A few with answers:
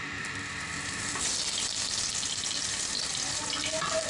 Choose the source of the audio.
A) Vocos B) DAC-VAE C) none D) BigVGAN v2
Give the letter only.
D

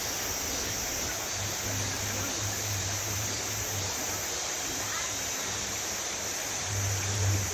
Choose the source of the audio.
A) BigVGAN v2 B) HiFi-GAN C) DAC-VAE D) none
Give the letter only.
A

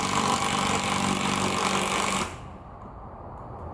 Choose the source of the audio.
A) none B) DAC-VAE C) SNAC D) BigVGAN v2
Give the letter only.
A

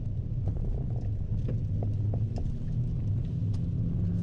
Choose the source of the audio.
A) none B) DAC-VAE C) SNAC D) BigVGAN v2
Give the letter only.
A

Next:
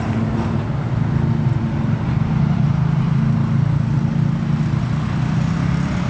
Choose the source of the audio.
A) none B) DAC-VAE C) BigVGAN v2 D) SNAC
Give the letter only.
A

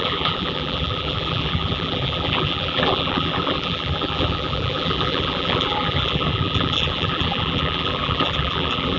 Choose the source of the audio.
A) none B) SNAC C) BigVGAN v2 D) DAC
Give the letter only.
C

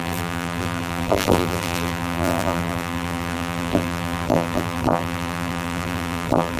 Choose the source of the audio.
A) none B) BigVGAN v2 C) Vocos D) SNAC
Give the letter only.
B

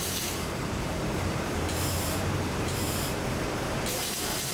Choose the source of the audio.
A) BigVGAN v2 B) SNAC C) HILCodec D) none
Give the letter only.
A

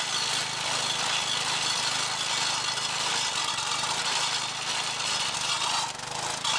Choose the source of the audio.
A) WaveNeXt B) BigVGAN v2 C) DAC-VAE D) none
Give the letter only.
D